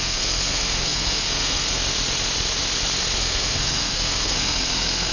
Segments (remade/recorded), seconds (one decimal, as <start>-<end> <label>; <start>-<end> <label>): 0.0-1.8 remade; 1.8-3.2 recorded; 3.2-5.1 remade